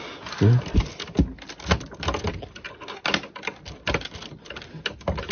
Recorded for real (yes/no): yes